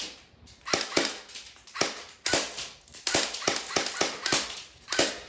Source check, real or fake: real